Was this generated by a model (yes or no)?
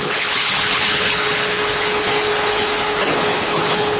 yes